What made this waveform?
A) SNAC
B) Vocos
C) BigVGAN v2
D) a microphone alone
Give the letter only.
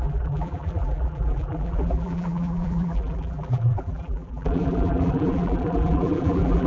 C